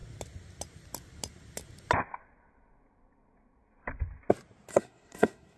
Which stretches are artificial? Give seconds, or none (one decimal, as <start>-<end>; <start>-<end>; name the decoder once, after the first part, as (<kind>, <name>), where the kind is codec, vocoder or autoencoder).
4.7-5.6 (codec, SNAC)